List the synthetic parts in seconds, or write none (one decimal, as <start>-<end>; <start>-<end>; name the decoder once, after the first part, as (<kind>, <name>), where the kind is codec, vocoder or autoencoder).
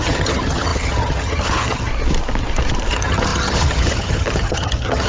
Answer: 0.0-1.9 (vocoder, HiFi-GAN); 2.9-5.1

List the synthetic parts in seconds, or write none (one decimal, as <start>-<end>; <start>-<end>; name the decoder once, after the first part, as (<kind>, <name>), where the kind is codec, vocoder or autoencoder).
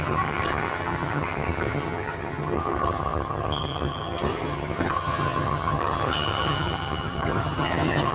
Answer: 0.0-8.1 (vocoder, HiFi-GAN)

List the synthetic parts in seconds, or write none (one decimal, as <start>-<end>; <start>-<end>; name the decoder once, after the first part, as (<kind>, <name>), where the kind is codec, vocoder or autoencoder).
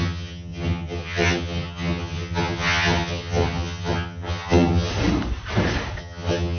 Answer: 0.0-4.9 (vocoder, HiFi-GAN); 6.0-6.6